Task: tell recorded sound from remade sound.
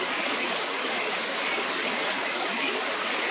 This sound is remade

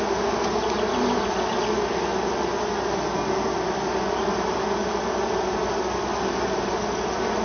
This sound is recorded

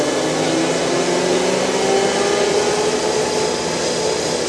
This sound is recorded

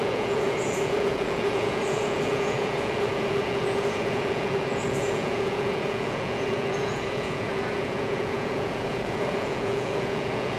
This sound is remade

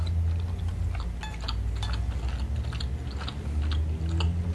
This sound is recorded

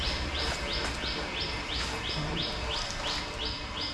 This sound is recorded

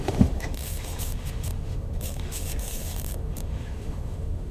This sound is remade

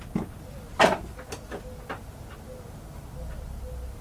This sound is recorded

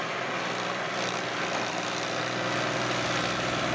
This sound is recorded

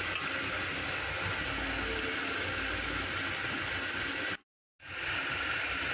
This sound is recorded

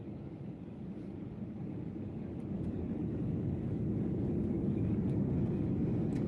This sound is remade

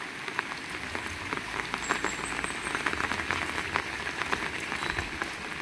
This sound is recorded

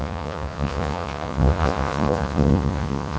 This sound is remade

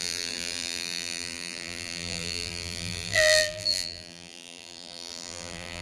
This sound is remade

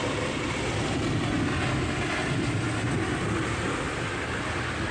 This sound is recorded